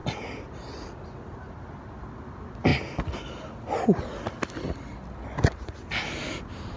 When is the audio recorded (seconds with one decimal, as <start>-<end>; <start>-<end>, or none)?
0.0-6.8